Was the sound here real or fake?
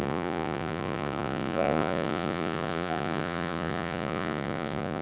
fake